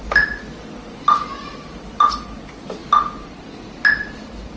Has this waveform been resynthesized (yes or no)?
no